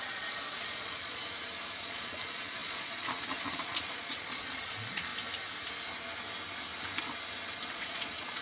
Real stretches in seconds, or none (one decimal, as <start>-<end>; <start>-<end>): 1.2-1.8; 5.1-7.7